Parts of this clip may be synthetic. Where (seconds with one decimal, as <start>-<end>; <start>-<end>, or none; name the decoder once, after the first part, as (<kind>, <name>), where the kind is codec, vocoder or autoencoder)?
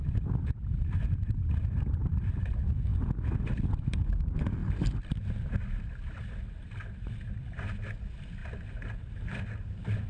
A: none